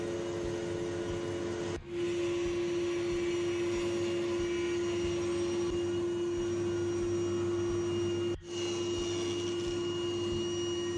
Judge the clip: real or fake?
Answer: real